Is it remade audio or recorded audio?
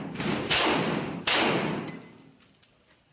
recorded